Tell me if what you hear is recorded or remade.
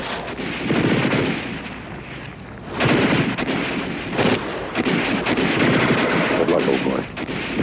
recorded